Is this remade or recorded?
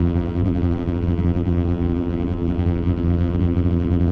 remade